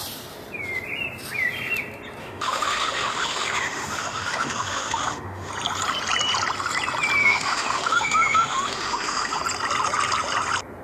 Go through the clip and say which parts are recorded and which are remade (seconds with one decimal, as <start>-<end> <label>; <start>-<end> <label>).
0.0-2.2 recorded; 2.2-5.5 remade; 5.5-7.2 recorded; 7.2-9.4 remade; 9.4-10.8 recorded